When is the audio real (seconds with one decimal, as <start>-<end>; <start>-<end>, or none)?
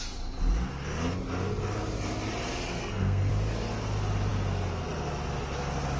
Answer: 0.0-2.7; 3.3-6.0